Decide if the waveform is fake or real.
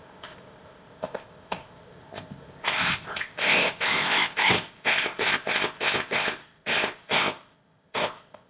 fake